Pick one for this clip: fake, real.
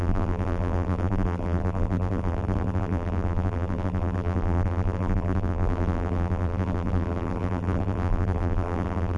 fake